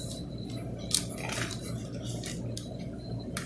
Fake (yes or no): no